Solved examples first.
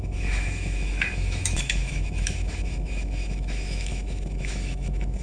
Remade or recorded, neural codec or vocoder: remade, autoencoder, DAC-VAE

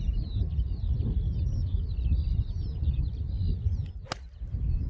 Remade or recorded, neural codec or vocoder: recorded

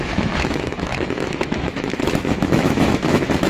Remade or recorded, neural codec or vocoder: remade, autoencoder, DAC-VAE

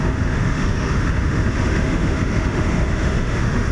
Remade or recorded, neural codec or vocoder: remade, autoencoder, DAC-VAE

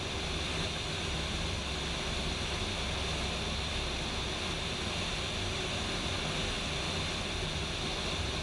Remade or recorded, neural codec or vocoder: recorded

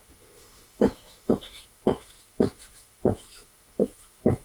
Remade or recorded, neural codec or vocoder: remade, autoencoder, DAC-VAE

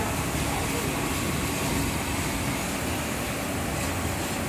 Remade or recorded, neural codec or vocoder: recorded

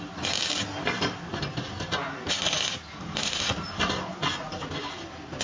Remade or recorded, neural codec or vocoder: recorded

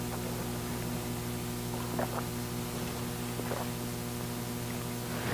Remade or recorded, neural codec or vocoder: recorded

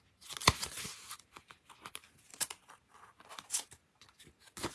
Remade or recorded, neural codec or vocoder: recorded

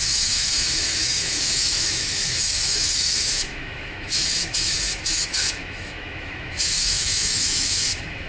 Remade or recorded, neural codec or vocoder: remade, autoencoder, DAC-VAE